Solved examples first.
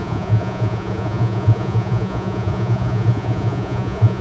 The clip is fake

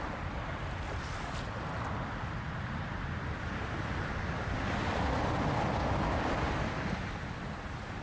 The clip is real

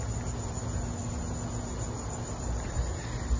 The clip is real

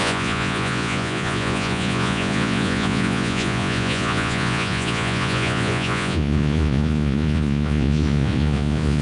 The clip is fake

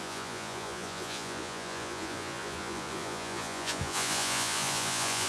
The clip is fake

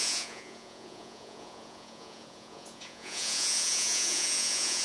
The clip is fake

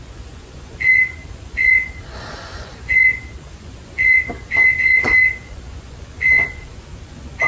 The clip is fake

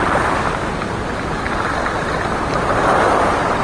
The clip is real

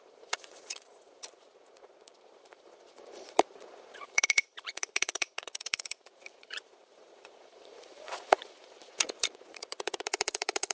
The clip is fake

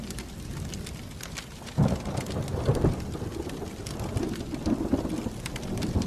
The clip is real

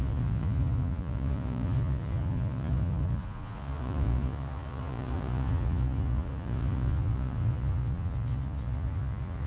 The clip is fake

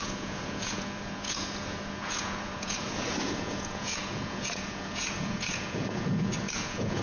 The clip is fake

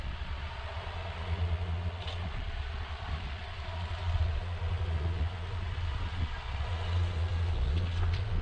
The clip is fake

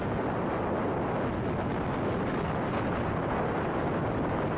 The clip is real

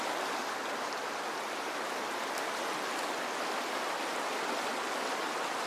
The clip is real